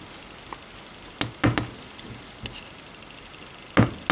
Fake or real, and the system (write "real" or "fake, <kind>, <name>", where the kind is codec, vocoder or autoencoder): real